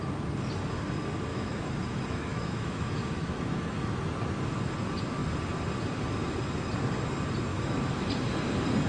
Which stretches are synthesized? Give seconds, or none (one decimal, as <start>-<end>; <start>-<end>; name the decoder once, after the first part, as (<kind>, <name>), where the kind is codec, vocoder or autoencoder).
1.3-4.0 (autoencoder, DAC-VAE); 7.5-8.1